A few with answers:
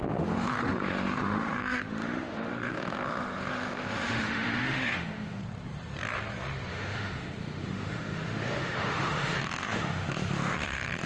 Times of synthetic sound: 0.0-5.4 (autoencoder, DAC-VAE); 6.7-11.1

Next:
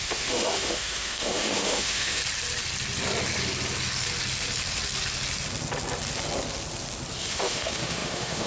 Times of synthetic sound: 0.0-2.2 (autoencoder, DAC-VAE); 7.3-8.5